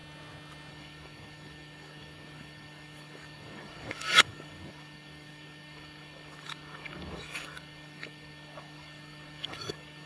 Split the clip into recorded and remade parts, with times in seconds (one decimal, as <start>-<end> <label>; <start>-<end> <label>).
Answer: 0.0-0.7 recorded; 0.7-10.1 remade